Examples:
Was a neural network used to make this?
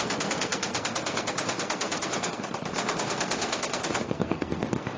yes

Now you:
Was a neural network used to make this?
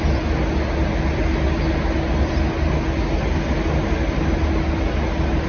no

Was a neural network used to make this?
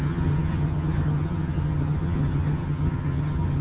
yes